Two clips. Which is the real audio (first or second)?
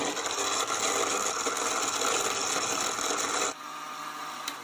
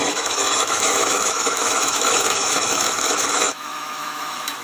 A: first